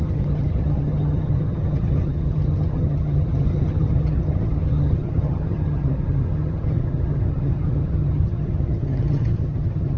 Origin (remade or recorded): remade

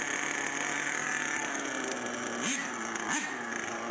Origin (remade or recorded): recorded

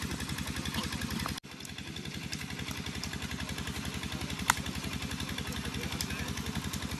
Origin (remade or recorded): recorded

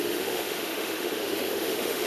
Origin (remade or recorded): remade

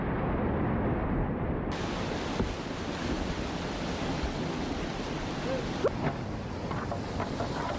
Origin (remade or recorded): recorded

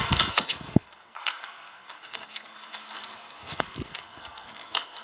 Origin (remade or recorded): remade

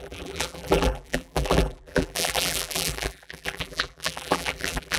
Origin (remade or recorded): remade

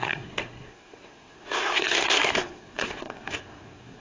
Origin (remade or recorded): remade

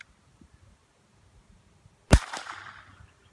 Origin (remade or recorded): recorded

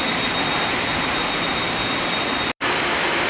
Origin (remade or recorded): recorded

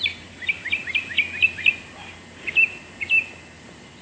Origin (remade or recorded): recorded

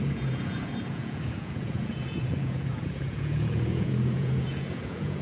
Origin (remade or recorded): remade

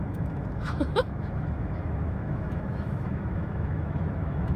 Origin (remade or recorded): remade